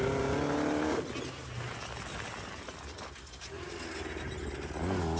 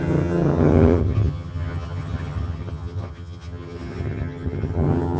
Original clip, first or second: first